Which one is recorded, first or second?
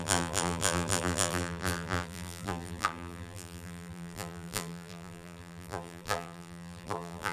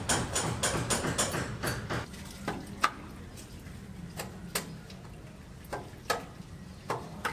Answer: second